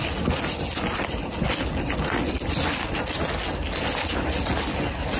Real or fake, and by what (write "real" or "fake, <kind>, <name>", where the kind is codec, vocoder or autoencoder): real